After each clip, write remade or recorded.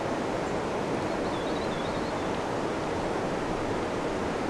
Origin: recorded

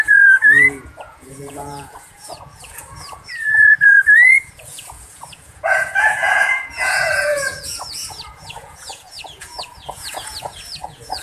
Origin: remade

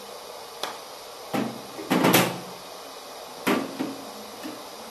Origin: recorded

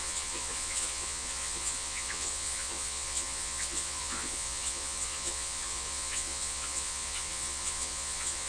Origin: remade